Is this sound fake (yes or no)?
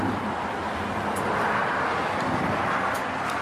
yes